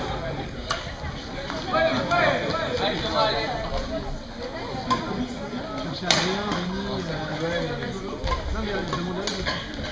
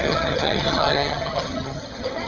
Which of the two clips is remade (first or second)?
second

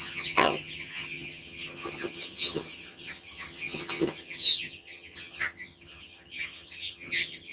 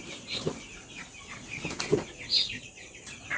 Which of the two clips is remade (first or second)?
first